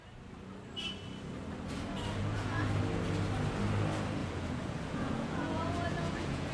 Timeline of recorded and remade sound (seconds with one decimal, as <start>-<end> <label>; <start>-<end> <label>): 0.0-2.2 recorded; 2.2-2.8 remade; 2.8-4.2 recorded; 4.2-6.5 remade